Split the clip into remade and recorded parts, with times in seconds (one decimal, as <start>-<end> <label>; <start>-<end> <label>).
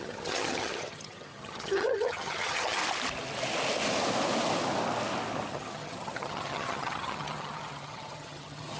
0.0-2.8 remade; 2.8-5.5 recorded; 5.5-8.8 remade